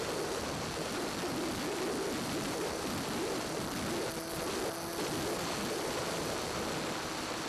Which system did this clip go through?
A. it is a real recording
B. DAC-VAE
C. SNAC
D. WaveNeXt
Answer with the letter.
A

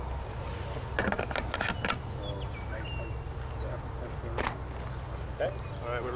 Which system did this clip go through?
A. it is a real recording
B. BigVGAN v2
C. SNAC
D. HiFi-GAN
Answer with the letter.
A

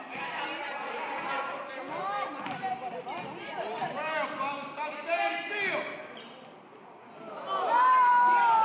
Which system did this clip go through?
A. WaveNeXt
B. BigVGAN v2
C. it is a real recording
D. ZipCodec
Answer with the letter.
C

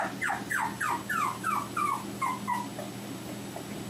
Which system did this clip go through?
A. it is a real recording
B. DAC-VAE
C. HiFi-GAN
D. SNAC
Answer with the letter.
A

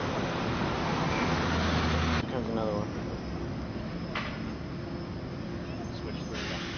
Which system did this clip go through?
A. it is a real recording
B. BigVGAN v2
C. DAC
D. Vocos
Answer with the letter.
A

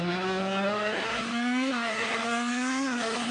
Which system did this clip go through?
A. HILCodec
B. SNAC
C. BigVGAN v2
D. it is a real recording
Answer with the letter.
B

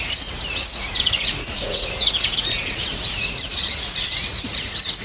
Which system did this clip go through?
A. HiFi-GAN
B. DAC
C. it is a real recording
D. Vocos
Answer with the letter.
D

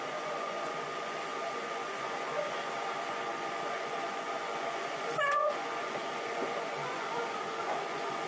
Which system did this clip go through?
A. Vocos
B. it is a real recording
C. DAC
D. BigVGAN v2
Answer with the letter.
A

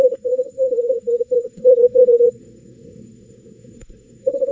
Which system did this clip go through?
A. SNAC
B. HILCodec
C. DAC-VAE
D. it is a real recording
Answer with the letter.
A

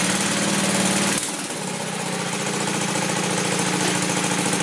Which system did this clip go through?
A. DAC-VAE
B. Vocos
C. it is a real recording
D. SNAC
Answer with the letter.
C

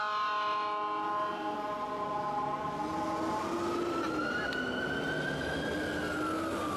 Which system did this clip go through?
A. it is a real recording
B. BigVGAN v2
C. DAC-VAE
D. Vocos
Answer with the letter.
A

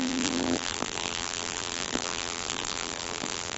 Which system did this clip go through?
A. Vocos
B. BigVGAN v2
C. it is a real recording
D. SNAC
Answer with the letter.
B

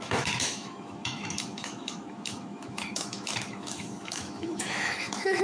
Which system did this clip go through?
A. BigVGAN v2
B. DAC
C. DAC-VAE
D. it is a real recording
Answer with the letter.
C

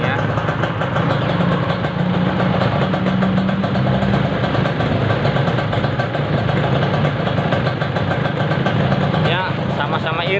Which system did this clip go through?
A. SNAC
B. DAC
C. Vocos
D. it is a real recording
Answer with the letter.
D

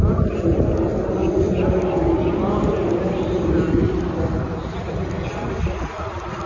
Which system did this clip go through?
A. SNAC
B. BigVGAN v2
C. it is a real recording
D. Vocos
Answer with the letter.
C